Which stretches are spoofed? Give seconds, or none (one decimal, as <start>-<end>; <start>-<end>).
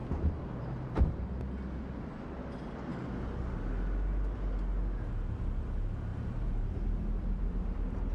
0.0-1.3; 6.1-6.7